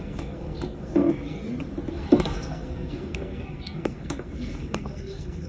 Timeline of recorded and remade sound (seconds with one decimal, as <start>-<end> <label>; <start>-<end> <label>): 0.0-1.4 remade; 1.4-1.9 recorded; 1.9-5.5 remade